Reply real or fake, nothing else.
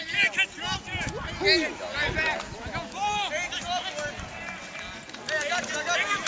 real